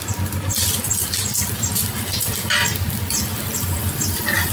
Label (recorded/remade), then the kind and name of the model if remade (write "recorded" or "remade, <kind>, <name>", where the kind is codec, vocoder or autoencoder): recorded